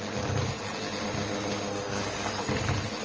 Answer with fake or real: real